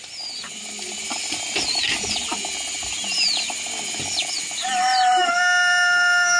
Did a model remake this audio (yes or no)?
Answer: no